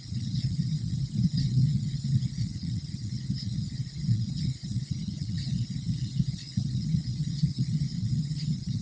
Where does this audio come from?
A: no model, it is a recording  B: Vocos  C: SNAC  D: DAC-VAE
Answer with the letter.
B